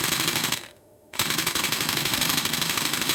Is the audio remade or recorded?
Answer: remade